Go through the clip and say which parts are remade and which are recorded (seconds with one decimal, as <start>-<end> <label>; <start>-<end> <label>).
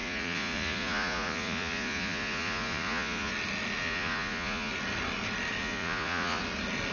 0.0-3.3 remade; 3.3-3.8 recorded; 3.8-4.7 remade; 4.7-5.6 recorded; 5.6-6.4 remade; 6.4-6.9 recorded